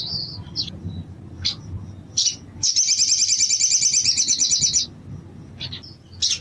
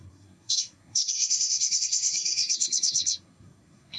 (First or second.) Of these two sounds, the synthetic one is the second